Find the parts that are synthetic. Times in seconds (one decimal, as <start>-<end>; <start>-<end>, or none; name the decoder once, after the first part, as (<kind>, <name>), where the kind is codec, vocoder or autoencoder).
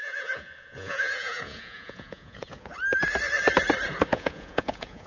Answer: 0.0-2.7 (vocoder, Vocos); 4.1-5.1